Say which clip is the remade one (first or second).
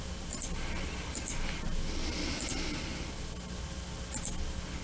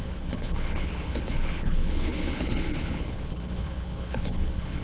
second